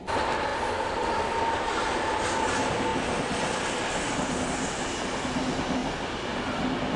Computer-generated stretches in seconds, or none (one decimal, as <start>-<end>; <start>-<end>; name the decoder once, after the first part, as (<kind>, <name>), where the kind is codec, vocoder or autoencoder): none